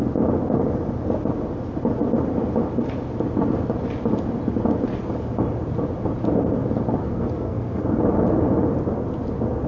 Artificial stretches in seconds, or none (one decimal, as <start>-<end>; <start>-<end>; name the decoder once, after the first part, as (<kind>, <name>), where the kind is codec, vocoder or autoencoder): 7.0-7.8 (codec, SNAC)